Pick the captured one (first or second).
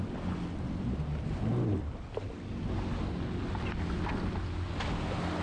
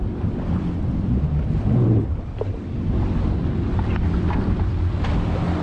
first